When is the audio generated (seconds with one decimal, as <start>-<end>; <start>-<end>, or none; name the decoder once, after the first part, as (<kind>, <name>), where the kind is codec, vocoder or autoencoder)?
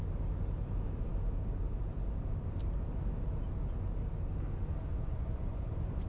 4.9-6.1 (vocoder, Vocos)